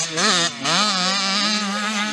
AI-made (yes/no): no